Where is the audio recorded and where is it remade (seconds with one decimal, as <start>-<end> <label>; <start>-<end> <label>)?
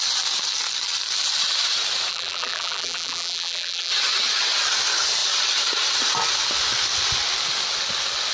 0.0-2.1 recorded; 2.1-3.9 remade; 3.9-8.3 recorded